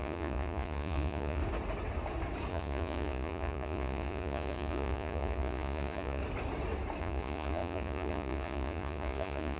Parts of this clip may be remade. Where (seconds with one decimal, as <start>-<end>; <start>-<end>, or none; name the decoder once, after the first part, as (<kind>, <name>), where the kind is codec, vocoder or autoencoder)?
0.0-1.4 (vocoder, Vocos); 2.5-6.2; 7.0-9.6